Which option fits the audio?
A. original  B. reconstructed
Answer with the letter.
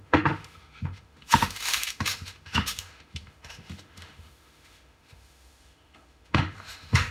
B